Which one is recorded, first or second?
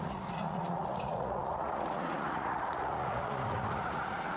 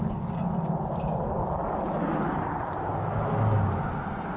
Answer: second